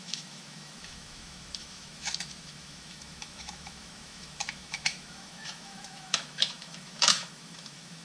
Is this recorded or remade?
remade